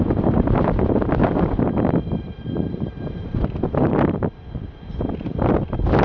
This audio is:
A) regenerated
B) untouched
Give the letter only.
B